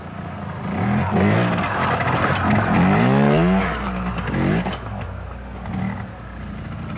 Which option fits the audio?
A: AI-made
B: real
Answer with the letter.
B